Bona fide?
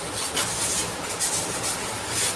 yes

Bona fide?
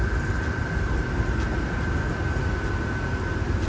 yes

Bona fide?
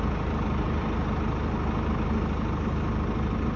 yes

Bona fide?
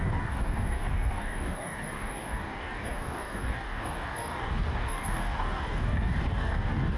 no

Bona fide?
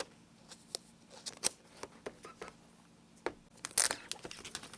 yes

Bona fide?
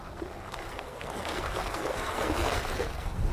no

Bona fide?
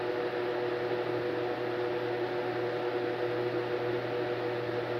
yes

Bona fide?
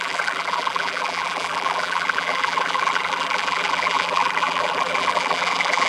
no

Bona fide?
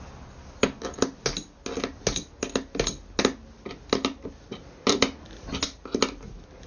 yes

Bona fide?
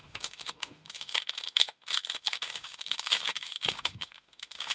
no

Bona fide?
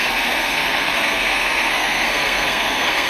no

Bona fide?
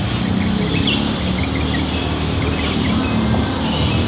yes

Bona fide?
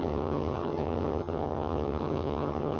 no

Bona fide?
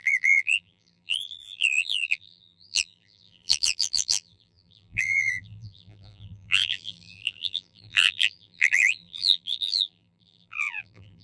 no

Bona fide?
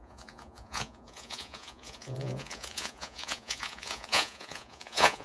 no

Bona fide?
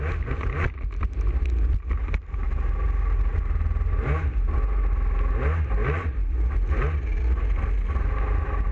yes